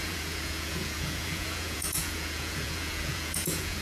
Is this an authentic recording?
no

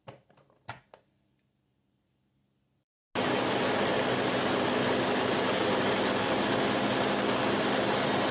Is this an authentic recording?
yes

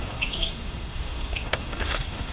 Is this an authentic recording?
no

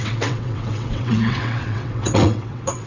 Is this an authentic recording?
no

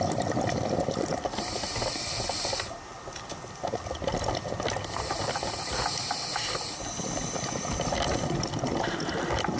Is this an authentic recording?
yes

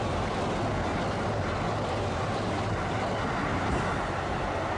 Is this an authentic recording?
yes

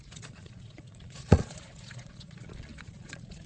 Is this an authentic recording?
no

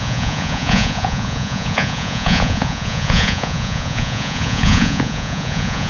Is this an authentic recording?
no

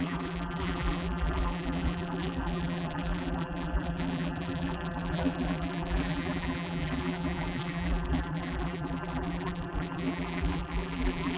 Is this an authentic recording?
no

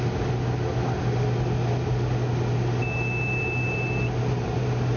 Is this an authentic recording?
yes